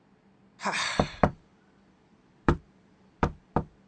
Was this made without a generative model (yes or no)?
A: no